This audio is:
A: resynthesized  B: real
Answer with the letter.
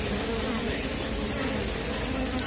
B